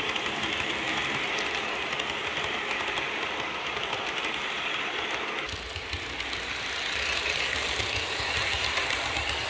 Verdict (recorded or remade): recorded